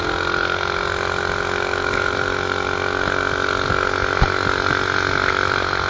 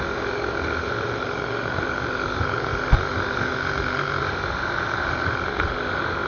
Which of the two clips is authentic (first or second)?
first